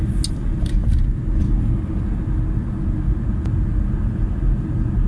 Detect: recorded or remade recorded